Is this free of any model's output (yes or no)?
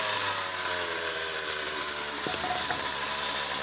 yes